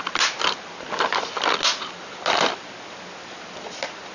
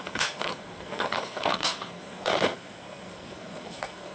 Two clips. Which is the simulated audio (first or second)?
second